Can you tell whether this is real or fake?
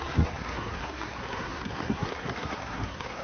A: fake